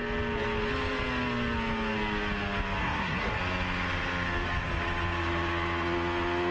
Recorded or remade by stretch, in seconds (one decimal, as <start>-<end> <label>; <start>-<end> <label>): 0.0-2.8 recorded; 2.8-3.4 remade; 3.4-6.5 recorded